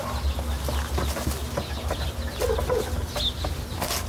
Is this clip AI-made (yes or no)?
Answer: no